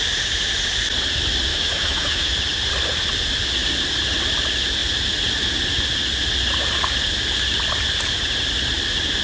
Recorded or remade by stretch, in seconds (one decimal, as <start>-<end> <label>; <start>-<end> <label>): 0.0-1.5 recorded; 1.5-2.3 remade; 2.3-9.2 recorded